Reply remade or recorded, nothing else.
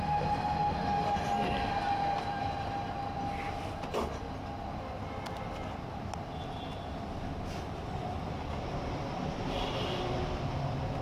recorded